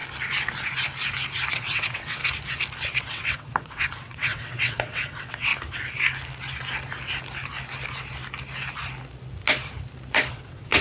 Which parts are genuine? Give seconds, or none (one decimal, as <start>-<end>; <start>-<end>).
0.0-1.5; 2.2-3.0; 5.5-10.3